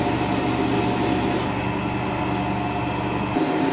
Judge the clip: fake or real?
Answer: real